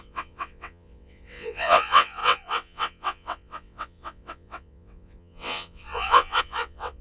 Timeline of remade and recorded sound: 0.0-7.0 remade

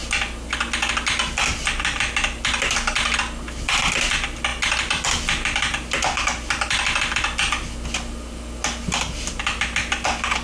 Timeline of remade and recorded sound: 0.0-10.4 recorded

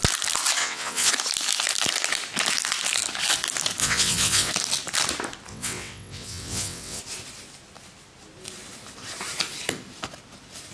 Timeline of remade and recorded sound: 0.0-0.6 recorded; 0.6-1.1 remade; 1.1-3.8 recorded; 3.8-4.5 remade; 4.5-5.5 recorded; 5.5-7.0 remade; 7.0-10.7 recorded